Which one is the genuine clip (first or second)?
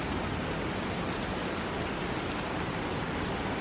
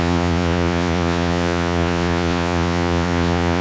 first